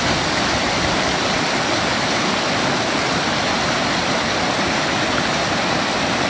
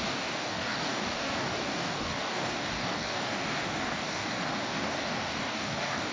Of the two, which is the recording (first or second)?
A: first